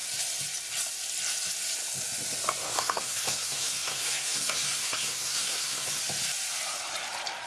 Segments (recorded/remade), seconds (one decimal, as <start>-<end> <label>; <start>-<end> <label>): 0.0-2.6 recorded; 2.6-6.0 remade; 6.0-7.5 recorded